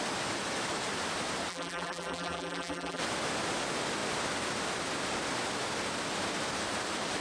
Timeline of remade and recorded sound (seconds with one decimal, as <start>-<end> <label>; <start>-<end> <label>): 0.0-1.5 recorded; 1.5-3.0 remade; 3.0-7.2 recorded